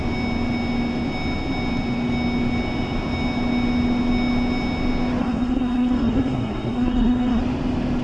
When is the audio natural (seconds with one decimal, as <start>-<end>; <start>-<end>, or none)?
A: 0.0-5.2; 7.4-8.0

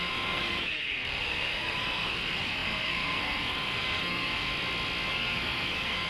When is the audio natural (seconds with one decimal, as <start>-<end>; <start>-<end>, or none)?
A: 4.5-5.1

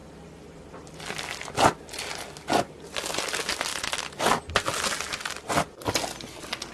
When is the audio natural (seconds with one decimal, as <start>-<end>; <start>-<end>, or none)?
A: 0.0-6.7

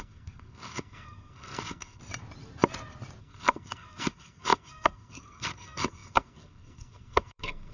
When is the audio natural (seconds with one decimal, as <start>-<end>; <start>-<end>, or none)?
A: 2.0-3.2